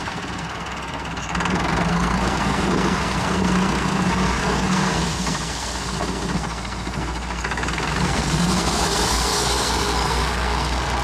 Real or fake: fake